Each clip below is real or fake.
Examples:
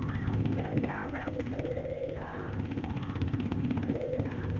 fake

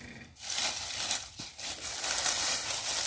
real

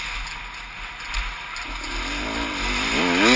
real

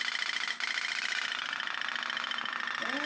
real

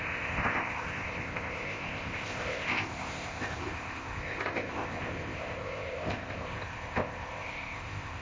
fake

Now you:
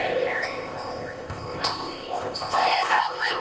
fake